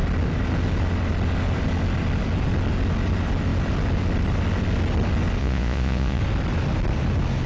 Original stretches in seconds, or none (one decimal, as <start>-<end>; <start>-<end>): 0.0-5.4; 6.2-7.5